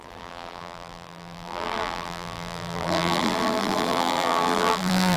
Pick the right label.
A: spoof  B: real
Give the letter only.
A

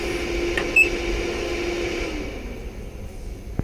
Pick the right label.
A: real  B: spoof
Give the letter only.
A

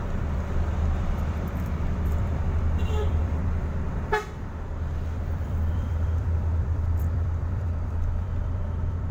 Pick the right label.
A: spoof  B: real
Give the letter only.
A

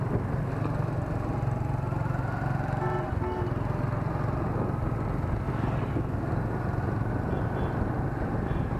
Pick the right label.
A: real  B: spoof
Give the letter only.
A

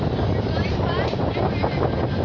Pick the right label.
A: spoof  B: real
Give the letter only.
A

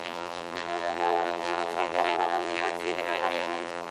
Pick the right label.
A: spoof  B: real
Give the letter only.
A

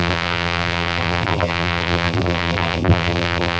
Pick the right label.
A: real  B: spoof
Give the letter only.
B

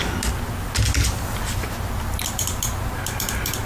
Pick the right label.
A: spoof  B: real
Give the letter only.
B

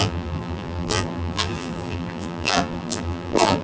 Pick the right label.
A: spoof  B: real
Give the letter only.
A